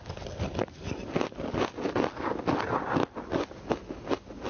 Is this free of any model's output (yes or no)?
yes